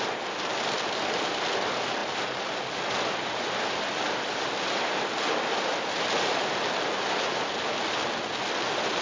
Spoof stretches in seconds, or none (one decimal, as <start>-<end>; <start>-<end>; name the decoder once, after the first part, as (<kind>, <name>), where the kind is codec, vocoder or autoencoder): none